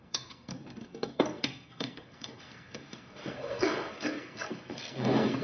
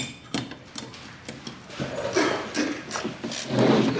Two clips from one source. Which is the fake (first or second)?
first